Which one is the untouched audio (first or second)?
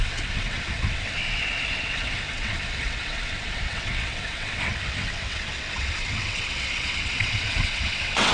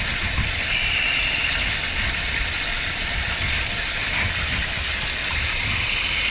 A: second